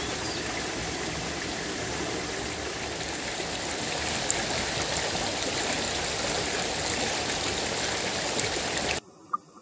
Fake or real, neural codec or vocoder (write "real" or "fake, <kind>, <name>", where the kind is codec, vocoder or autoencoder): real